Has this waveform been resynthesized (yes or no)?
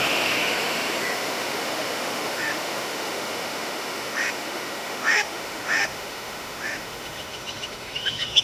yes